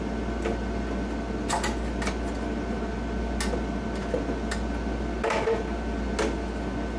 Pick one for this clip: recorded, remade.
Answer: recorded